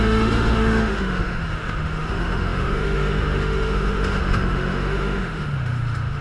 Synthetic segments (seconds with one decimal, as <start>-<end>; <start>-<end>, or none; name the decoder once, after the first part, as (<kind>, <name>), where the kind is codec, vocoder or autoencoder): 0.0-6.2 (autoencoder, DAC-VAE)